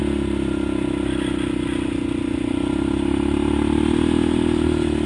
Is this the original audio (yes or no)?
yes